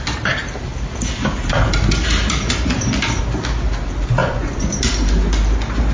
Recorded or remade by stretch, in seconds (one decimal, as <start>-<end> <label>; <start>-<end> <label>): 0.0-4.2 recorded; 4.2-4.8 remade; 4.8-5.9 recorded